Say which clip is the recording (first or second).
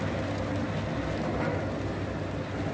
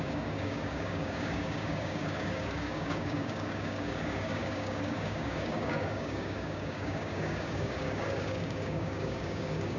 first